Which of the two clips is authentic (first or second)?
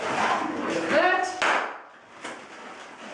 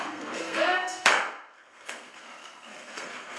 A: first